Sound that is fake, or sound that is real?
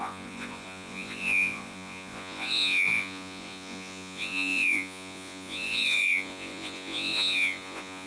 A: fake